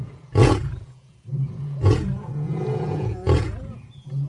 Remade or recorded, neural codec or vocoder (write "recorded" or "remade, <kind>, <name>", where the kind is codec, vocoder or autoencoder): remade, vocoder, Vocos